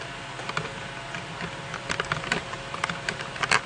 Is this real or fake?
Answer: fake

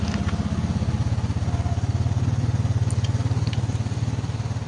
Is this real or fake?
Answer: real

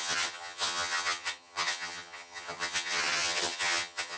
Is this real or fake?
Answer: fake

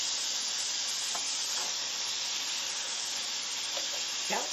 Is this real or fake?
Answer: real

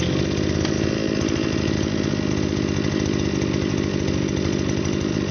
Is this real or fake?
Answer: real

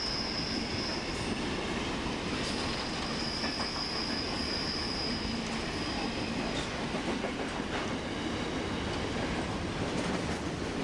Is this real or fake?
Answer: real